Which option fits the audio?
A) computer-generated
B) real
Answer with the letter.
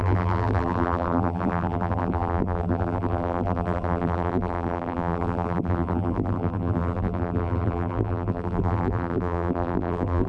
A